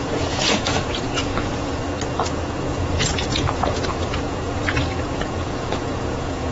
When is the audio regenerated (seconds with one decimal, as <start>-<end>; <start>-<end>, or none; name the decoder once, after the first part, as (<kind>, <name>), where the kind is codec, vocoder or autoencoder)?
0.0-1.8 (vocoder, Vocos); 2.3-6.5